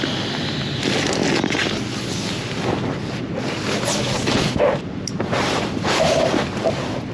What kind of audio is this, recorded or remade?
recorded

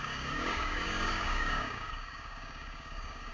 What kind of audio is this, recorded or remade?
remade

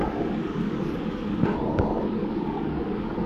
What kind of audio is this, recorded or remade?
remade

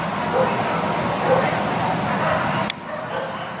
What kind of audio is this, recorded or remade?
recorded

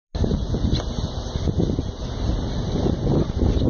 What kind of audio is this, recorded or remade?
recorded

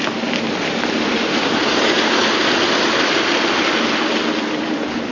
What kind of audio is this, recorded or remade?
recorded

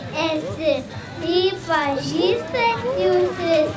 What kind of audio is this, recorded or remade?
recorded